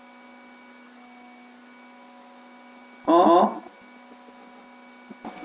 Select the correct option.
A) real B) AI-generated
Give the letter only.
A